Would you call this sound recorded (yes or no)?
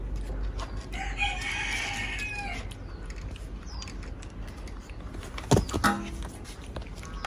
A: yes